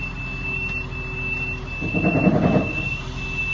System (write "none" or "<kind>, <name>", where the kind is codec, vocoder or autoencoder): none